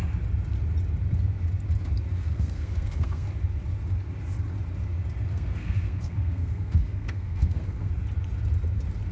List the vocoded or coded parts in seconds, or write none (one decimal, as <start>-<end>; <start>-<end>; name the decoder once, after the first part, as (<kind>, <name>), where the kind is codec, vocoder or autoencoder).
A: 2.2-3.3 (codec, SNAC); 5.3-7.9